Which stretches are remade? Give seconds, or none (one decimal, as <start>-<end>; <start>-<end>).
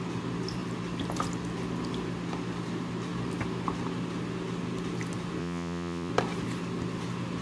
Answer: 5.4-6.1